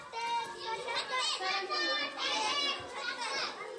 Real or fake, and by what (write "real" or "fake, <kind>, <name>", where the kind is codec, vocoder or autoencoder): real